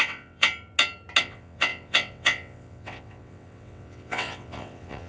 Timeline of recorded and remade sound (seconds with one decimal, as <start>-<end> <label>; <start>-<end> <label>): 0.0-0.5 remade; 0.5-1.2 recorded; 1.2-5.1 remade